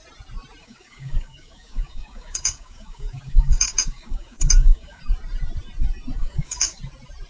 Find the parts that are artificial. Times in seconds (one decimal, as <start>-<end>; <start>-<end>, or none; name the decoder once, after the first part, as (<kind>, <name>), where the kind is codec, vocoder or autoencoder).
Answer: 0.6-5.0 (codec, DAC); 6.2-6.8